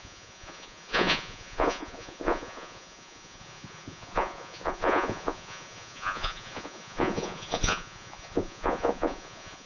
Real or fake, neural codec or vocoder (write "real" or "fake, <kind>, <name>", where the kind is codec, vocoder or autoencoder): fake, vocoder, Vocos